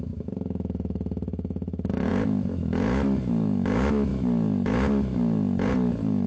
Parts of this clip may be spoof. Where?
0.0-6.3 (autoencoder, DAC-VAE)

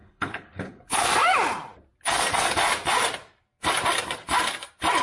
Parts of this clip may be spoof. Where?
0.0-1.1 (codec, HILCodec)

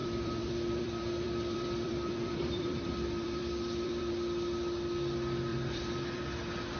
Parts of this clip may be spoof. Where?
0.0-4.1 (vocoder, BigVGAN v2); 5.5-6.2

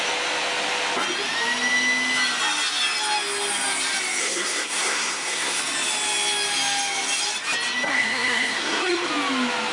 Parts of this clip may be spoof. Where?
4.2-5.6 (codec, SNAC); 7.9-9.1

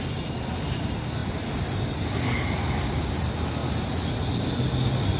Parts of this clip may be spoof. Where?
none

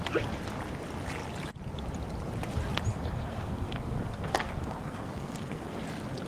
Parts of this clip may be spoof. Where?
2.9-5.8 (codec, SNAC)

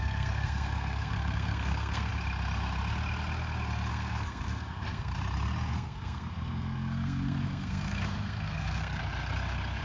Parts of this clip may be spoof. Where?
0.0-2.1 (codec, SNAC); 3.9-5.1; 5.7-9.0

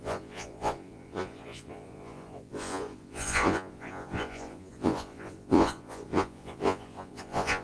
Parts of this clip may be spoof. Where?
0.0-7.6 (vocoder, Vocos)